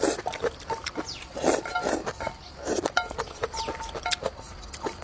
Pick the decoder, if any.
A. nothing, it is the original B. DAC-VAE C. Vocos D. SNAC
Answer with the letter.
A